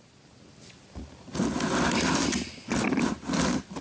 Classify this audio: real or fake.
real